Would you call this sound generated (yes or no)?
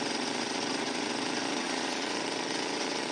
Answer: yes